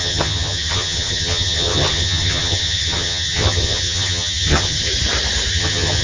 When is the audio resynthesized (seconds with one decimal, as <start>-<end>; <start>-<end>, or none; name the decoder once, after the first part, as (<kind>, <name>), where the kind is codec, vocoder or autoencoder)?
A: 0.0-4.9 (vocoder, HiFi-GAN); 5.5-6.0